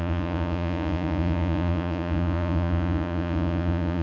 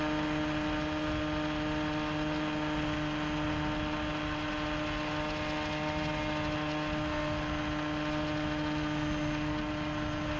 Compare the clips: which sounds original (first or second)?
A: second